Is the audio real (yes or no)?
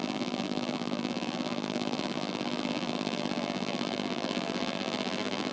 no